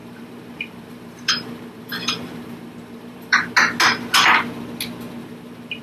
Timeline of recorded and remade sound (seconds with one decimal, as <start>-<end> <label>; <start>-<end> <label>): 0.0-3.5 remade; 3.5-5.2 recorded; 5.2-5.8 remade